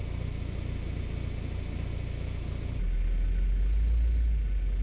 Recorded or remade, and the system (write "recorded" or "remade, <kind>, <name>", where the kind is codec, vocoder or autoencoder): recorded